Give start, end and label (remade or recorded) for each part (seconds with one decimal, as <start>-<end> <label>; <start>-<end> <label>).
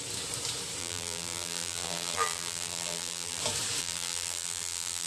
0.0-0.8 recorded; 0.8-3.4 remade; 3.4-3.8 recorded; 3.8-5.1 remade